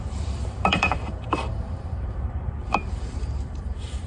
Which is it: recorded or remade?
remade